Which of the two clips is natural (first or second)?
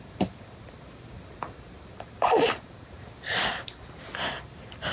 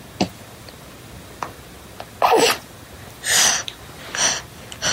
second